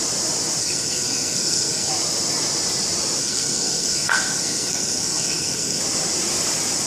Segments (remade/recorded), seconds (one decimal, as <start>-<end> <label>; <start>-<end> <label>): 0.0-0.6 recorded; 0.6-1.9 remade; 1.9-3.2 recorded; 3.2-5.8 remade; 5.8-6.9 recorded